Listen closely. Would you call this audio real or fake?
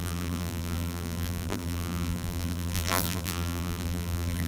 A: fake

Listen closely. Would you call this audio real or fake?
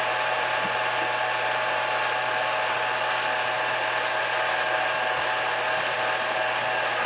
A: real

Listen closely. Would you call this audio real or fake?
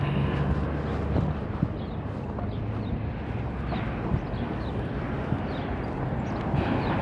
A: real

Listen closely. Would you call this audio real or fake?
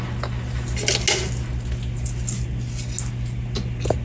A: real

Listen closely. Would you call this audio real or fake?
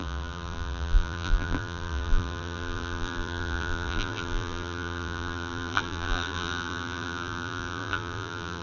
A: fake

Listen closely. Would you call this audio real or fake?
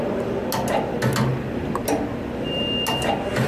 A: real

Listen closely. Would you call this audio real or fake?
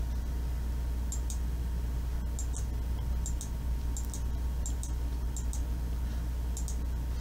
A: real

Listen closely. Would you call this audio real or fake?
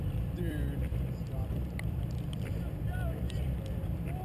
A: fake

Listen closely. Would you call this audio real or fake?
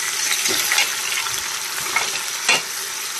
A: fake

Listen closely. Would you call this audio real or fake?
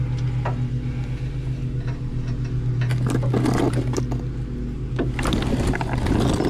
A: real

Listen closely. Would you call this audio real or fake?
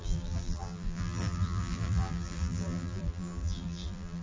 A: fake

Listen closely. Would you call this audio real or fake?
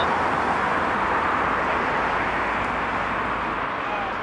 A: real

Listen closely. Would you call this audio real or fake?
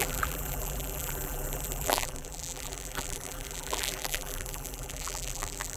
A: fake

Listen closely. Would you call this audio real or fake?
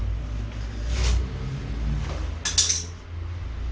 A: real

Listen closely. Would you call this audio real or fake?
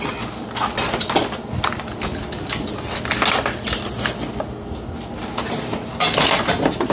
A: real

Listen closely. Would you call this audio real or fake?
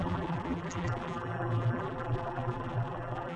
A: fake